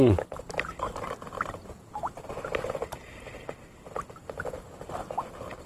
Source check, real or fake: real